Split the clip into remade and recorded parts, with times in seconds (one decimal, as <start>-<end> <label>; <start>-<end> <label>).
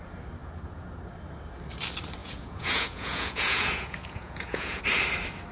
0.0-0.4 recorded; 0.4-1.0 remade; 1.0-2.2 recorded; 2.2-4.8 remade; 4.8-5.5 recorded